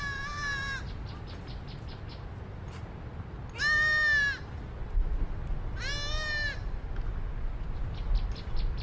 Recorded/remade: recorded